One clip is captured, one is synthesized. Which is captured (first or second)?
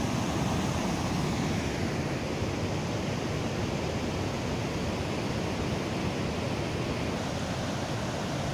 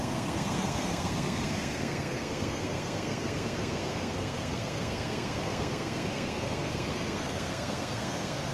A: first